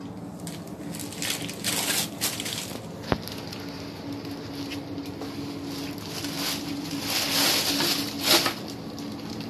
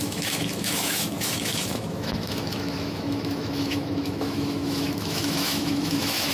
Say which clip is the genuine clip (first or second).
first